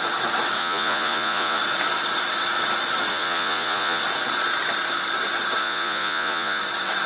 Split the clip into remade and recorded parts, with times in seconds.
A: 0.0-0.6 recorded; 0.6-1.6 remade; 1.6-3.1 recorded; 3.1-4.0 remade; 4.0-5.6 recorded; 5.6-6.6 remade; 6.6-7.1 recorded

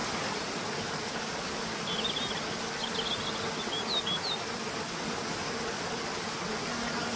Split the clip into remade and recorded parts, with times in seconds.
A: 0.0-7.2 recorded

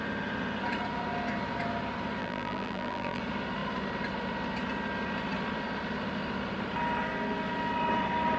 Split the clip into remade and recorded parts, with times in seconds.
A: 0.0-2.2 recorded; 2.2-3.2 remade; 3.2-8.4 recorded